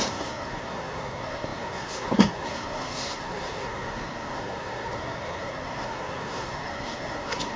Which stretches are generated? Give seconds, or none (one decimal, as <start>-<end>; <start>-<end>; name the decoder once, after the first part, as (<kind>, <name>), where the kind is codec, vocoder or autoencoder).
0.0-7.6 (codec, SNAC)